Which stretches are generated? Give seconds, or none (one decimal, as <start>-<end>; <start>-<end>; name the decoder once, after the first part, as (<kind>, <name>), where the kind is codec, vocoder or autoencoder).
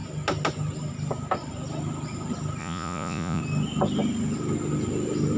2.6-3.4 (vocoder, Vocos)